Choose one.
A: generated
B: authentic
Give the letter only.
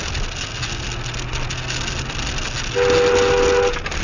B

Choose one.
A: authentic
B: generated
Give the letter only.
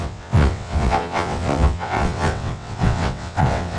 B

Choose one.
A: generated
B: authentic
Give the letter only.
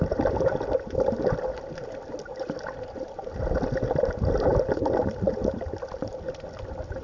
B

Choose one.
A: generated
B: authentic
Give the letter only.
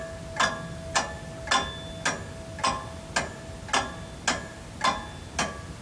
B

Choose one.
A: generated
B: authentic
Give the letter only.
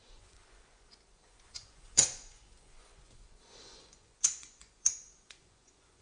A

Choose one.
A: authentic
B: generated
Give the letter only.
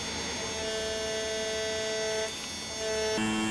A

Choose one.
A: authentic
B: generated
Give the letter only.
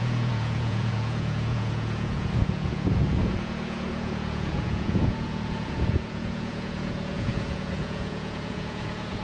B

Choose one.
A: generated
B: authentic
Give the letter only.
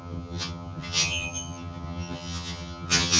A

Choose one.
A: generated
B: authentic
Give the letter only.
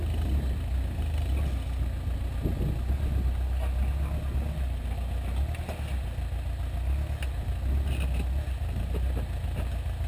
B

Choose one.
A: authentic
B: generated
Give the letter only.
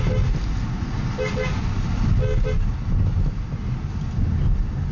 A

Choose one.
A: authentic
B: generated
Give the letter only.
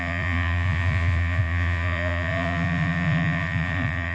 B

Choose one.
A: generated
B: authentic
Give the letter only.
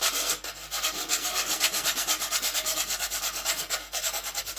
A